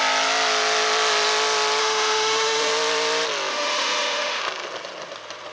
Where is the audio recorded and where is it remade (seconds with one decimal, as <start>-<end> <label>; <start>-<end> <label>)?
0.0-1.8 recorded; 1.8-2.7 remade; 2.7-3.5 recorded; 3.5-4.4 remade; 4.4-5.5 recorded